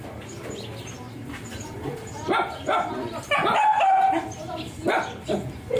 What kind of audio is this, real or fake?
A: real